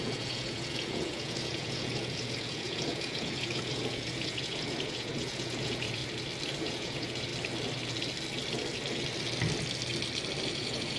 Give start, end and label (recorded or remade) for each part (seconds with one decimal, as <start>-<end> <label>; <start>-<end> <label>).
0.0-6.0 remade; 6.0-6.6 recorded; 6.6-7.3 remade; 7.3-10.5 recorded; 10.5-11.0 remade